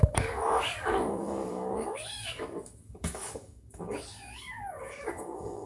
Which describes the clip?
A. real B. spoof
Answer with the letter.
B